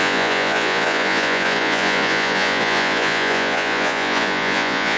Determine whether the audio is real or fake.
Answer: fake